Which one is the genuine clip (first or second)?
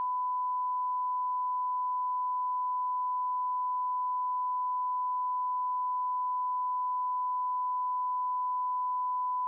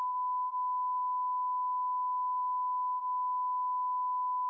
first